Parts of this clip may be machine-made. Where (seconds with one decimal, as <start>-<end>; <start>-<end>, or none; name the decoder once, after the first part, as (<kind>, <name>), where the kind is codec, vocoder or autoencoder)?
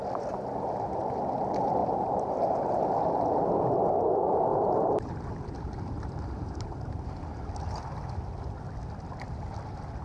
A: 1.8-2.7 (vocoder, BigVGAN v2); 4.5-7.1